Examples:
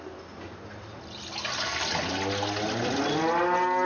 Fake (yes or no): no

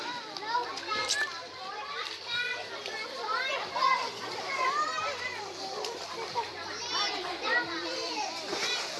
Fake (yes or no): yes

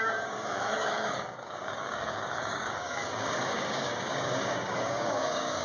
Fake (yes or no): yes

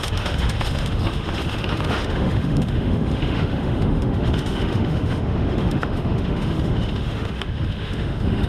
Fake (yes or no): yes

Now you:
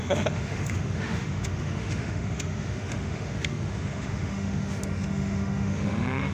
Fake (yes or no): yes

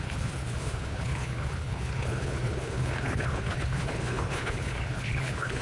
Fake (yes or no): yes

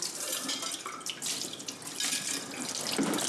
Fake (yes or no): no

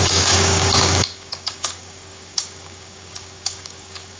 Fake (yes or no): yes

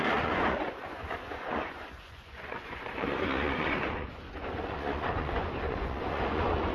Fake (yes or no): yes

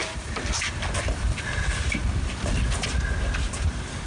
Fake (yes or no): no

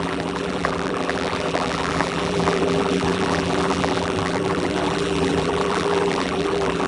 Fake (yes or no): yes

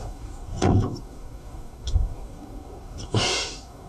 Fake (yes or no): yes